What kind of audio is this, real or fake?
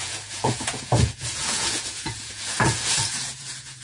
fake